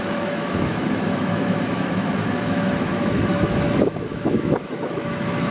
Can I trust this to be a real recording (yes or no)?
no